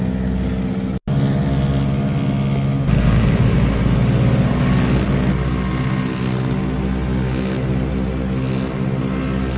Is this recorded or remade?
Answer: recorded